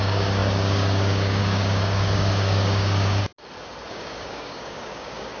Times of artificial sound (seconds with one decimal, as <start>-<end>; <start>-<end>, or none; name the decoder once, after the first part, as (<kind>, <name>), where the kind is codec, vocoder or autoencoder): 0.0-3.2 (codec, DAC); 3.9-5.4